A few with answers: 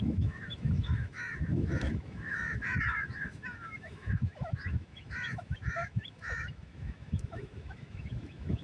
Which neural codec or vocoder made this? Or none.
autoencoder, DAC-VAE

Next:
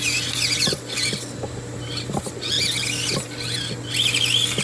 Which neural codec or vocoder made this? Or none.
none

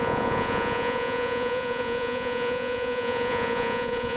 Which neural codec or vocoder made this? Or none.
vocoder, Vocos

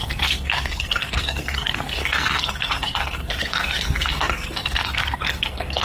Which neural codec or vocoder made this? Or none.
codec, SNAC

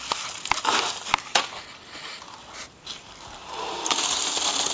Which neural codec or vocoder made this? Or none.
none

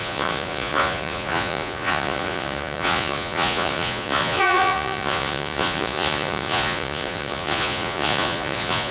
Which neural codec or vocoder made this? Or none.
vocoder, Vocos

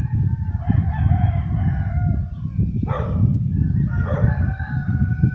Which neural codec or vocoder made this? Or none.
none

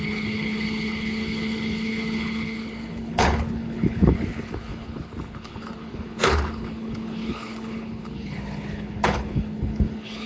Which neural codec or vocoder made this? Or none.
codec, HILCodec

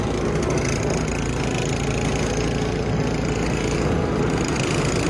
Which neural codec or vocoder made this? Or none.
none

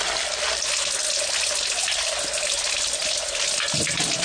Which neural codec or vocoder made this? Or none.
none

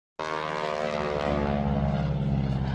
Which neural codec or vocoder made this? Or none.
none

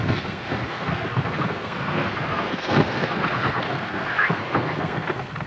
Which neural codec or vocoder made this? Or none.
codec, SNAC